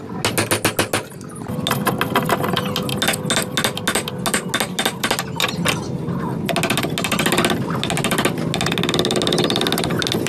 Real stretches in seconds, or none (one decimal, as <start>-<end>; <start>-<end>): 0.0-10.3